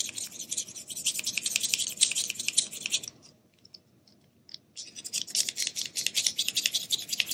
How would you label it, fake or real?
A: real